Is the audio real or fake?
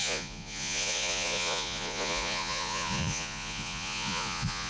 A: fake